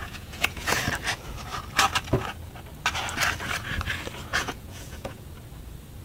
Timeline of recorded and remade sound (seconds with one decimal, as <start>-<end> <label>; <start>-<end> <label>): 0.0-0.8 remade; 0.8-4.3 recorded; 4.3-5.2 remade; 5.2-6.0 recorded